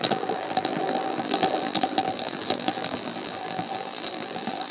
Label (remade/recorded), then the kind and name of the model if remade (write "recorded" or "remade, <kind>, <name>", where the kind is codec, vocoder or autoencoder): remade, vocoder, BigVGAN v2